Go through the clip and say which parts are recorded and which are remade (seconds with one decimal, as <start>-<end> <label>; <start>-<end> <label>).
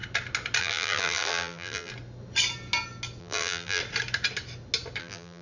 0.0-0.6 recorded; 0.6-1.9 remade; 1.9-3.2 recorded; 3.2-3.8 remade; 3.8-5.0 recorded; 5.0-5.4 remade